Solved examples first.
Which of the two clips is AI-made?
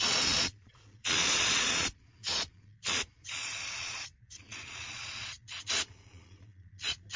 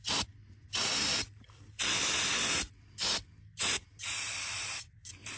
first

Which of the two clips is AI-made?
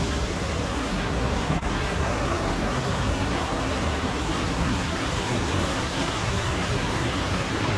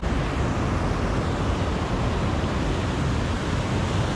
first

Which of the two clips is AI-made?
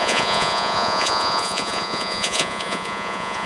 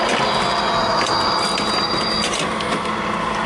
first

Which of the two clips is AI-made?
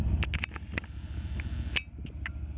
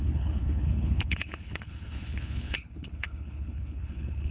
second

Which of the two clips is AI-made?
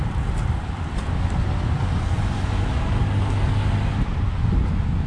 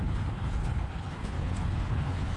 second